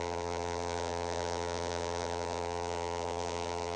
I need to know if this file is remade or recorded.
remade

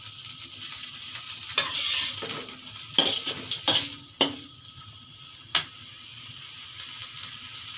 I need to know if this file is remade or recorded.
recorded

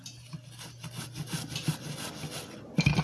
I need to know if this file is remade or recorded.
recorded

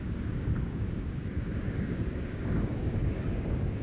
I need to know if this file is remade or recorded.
remade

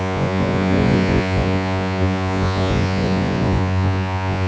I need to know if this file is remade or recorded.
remade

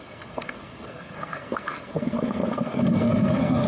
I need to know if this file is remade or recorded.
remade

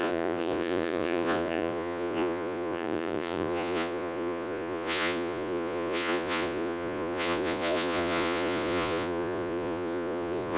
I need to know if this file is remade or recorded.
remade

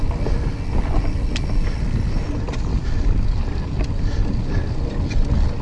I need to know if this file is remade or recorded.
recorded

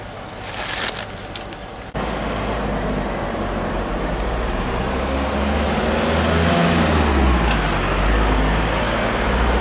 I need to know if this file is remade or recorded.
recorded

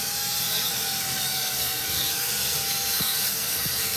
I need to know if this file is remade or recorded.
remade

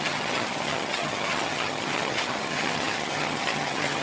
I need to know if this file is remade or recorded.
remade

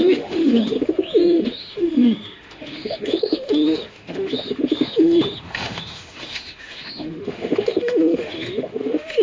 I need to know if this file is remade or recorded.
remade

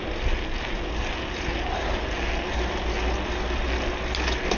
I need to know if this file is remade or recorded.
recorded